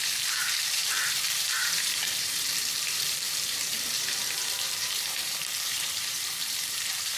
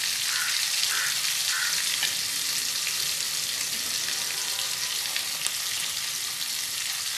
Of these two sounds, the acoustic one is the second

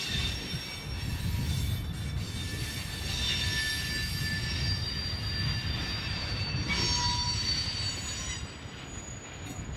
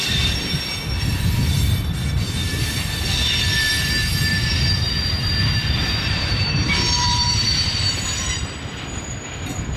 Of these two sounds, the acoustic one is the first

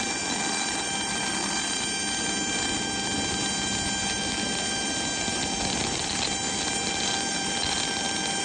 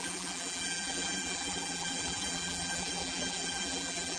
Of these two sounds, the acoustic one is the first